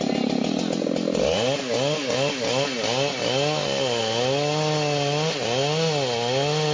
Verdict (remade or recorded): recorded